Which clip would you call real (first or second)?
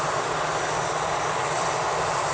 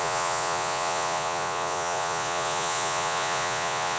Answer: first